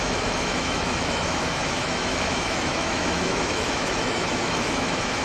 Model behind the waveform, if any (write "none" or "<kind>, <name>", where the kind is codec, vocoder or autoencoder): autoencoder, DAC-VAE